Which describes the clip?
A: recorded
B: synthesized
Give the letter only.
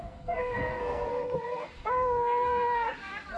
B